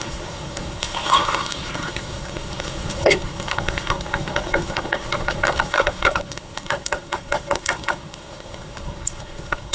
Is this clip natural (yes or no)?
no